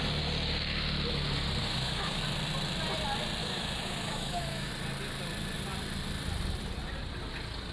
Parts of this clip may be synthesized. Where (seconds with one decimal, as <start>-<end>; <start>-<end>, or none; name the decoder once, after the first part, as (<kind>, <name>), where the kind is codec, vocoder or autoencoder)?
1.6-2.2 (autoencoder, DAC-VAE); 3.4-4.7